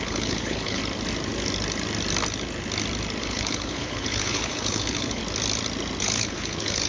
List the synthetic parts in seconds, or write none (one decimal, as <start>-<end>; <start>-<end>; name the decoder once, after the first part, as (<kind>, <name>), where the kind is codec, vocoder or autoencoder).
0.0-0.8 (codec, HILCodec); 3.2-5.2; 6.0-6.9